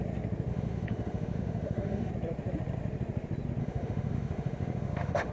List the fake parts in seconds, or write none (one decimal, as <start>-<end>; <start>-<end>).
0.5-2.1; 3.6-5.3